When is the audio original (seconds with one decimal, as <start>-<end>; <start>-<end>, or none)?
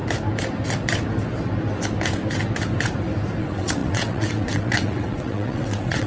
0.0-3.4